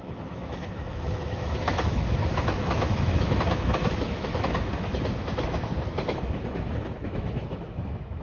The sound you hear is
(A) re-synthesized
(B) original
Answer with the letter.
A